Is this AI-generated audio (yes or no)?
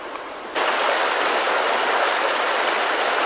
no